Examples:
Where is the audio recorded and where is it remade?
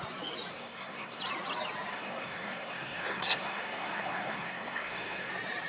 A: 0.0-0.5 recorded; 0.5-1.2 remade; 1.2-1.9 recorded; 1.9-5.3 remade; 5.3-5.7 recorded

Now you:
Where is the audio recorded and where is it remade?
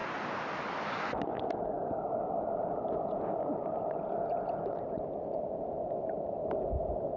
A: 0.0-7.2 recorded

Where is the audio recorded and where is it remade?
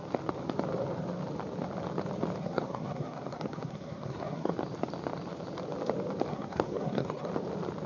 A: 0.0-2.4 recorded; 2.4-4.5 remade; 4.5-6.3 recorded; 6.3-7.3 remade; 7.3-7.9 recorded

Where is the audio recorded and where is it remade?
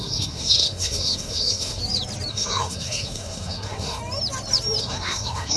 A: 0.0-1.8 remade; 1.8-2.3 recorded; 2.3-4.0 remade; 4.0-4.8 recorded; 4.8-5.6 remade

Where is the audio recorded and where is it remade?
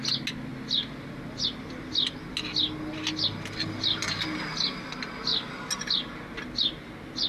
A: 0.0-7.3 recorded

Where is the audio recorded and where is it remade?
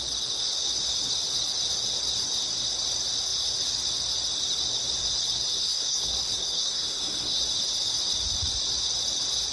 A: 0.0-5.6 recorded; 5.6-7.4 remade; 7.4-9.5 recorded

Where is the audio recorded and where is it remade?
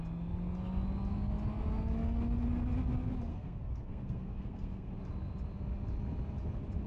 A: 0.0-3.3 recorded; 3.3-4.9 remade; 4.9-6.9 recorded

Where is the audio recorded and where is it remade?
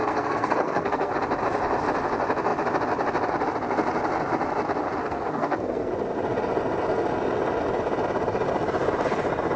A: 0.0-1.1 remade; 1.1-5.0 recorded; 5.0-5.9 remade; 5.9-9.6 recorded